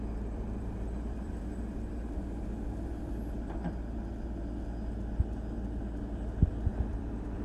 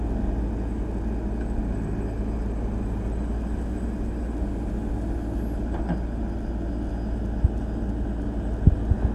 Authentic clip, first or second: second